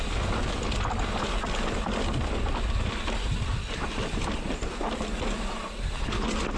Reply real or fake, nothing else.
real